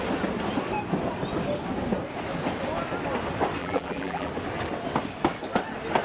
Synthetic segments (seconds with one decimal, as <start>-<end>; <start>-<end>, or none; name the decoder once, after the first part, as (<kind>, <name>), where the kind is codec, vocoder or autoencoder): 3.6-4.3 (vocoder, BigVGAN v2)